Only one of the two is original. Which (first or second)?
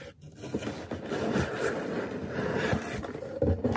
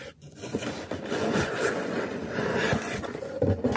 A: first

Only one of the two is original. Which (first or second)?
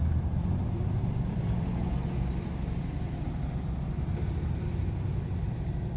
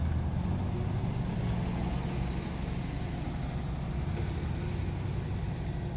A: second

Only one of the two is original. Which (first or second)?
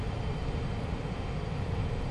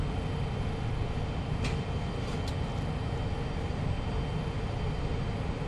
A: second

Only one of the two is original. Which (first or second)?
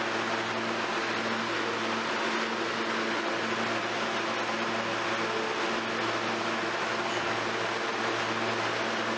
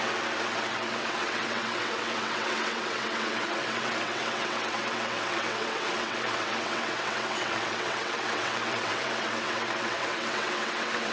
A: first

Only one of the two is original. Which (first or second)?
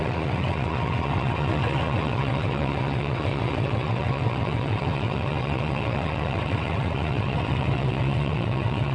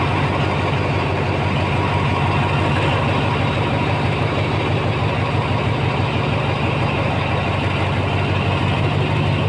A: second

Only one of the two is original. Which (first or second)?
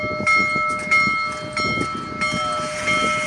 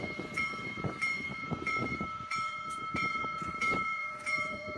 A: first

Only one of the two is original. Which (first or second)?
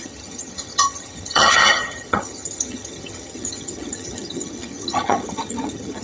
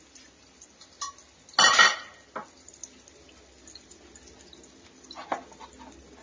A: second